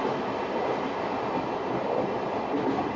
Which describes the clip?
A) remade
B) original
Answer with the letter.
B